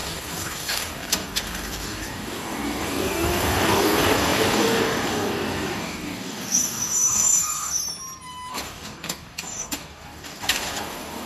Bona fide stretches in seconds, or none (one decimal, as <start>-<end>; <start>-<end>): 7.8-8.5